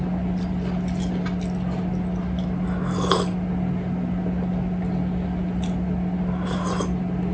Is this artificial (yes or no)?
no